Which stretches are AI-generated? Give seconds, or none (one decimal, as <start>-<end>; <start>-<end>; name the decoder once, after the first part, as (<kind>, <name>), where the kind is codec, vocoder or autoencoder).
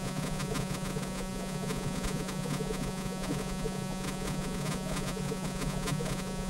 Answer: 0.0-6.5 (vocoder, Vocos)